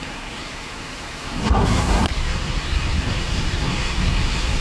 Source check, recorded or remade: remade